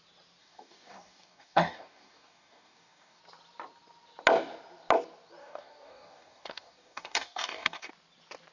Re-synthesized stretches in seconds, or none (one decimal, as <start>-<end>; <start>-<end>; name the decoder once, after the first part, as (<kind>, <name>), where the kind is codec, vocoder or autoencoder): 0.4-3.2 (codec, DAC); 5.4-7.9